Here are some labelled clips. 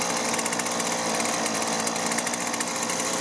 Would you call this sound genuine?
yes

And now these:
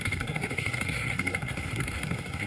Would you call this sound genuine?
no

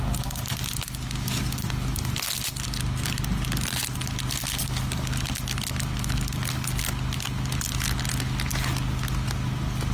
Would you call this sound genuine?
yes